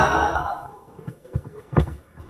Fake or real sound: fake